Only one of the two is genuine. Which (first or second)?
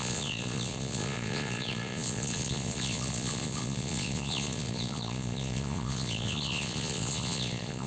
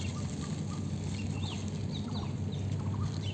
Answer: second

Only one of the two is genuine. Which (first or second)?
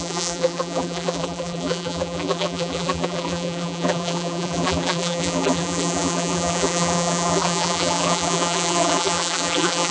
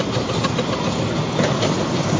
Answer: second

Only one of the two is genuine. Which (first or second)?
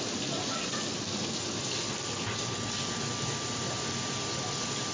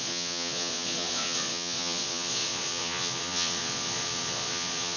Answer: first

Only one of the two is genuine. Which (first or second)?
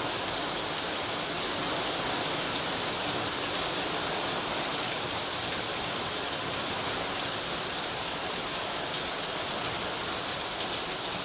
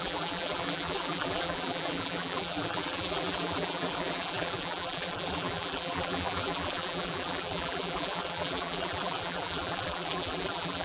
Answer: first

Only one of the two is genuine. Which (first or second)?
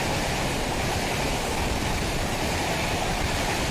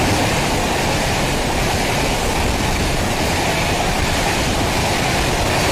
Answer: second